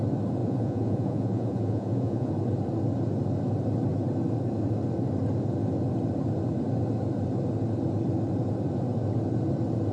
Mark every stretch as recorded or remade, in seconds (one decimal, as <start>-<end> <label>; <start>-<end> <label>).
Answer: 0.0-0.4 recorded; 0.4-2.3 remade; 2.3-9.9 recorded